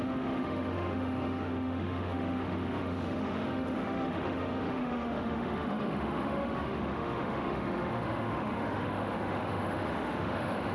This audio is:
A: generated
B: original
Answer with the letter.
A